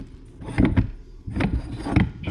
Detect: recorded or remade recorded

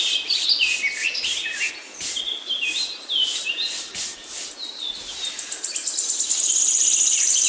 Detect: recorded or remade recorded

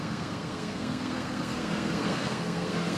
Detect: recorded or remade remade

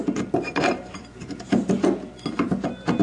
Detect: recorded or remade recorded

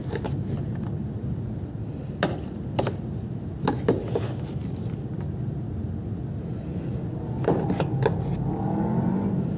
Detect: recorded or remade recorded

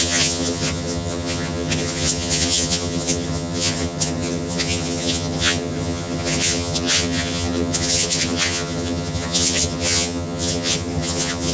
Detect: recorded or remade remade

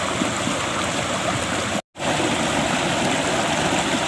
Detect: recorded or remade recorded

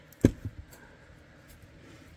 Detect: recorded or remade recorded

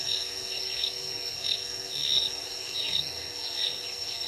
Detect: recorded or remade remade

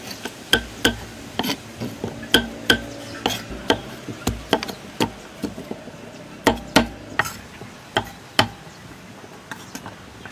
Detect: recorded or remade recorded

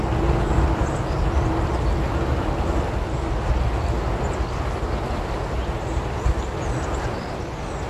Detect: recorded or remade recorded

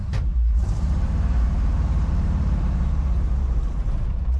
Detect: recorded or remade remade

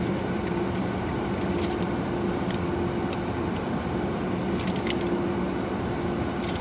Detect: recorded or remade recorded